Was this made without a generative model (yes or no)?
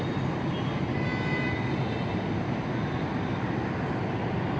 yes